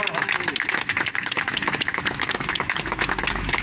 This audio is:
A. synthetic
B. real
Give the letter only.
A